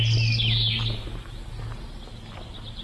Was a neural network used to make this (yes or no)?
no